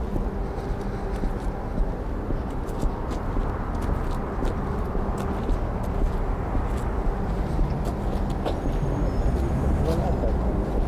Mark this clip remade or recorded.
recorded